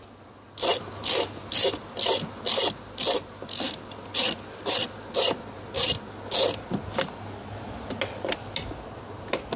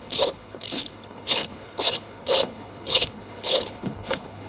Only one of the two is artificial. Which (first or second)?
second